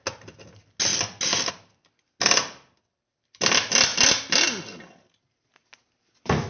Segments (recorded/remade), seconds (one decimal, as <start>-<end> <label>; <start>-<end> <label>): 0.0-6.5 recorded